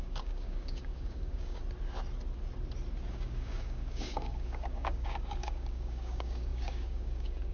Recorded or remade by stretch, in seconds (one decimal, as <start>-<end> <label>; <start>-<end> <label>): 0.0-1.6 remade; 1.6-3.1 recorded; 3.1-7.5 remade